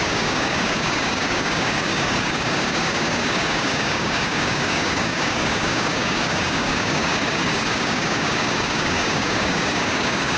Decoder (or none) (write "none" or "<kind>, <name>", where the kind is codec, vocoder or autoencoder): codec, DAC